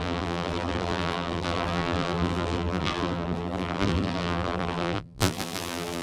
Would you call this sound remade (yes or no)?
yes